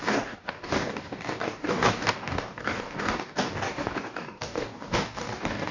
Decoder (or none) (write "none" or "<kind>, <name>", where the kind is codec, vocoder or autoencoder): codec, DAC